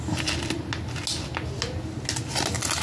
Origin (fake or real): real